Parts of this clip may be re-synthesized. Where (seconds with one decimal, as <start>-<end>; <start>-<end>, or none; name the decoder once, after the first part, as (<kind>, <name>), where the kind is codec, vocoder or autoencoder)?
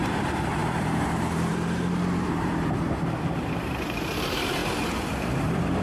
0.0-4.6 (vocoder, BigVGAN v2); 5.1-5.8